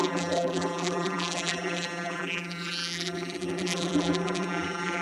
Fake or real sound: fake